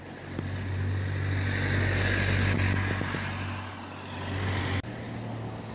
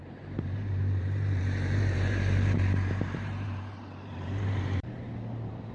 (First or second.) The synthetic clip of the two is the second